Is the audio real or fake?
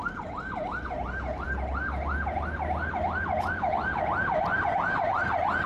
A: real